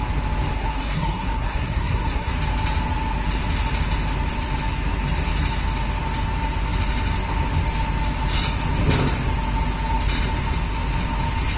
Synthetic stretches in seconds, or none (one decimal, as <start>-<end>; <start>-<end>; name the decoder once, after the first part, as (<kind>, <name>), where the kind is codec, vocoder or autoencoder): 0.5-2.3 (codec, SNAC)